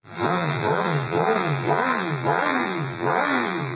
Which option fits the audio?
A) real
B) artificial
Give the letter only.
B